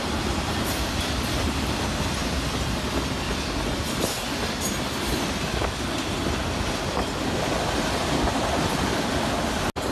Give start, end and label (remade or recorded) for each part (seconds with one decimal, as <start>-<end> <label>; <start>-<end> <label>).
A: 0.0-9.9 recorded